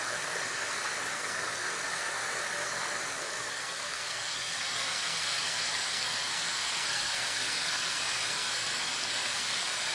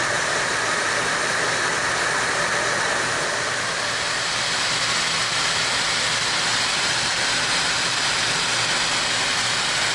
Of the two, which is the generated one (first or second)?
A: first